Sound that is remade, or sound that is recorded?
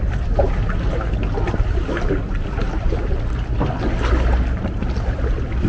recorded